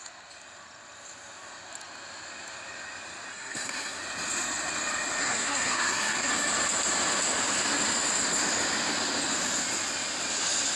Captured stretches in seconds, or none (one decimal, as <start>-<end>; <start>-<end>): 0.0-3.3; 4.0-5.2; 6.3-10.8